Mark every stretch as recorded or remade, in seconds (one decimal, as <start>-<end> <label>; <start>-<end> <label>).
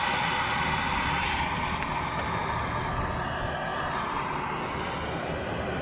0.0-2.4 recorded; 2.4-2.9 remade; 2.9-3.7 recorded; 3.7-4.3 remade; 4.3-5.8 recorded